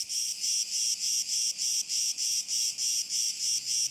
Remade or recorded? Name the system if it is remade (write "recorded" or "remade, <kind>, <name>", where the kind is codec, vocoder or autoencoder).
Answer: recorded